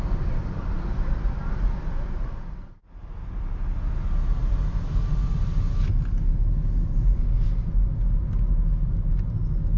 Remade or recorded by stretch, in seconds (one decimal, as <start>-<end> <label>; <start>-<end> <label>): 0.0-9.8 recorded